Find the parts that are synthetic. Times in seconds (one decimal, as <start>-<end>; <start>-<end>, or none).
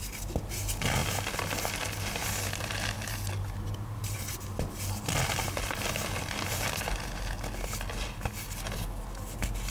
none